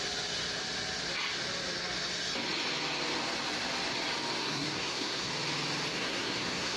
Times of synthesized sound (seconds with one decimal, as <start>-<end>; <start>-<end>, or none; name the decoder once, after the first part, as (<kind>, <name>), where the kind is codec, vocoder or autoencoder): 4.4-5.3 (codec, SNAC); 5.9-6.8